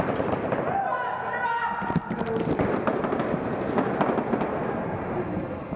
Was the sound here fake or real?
real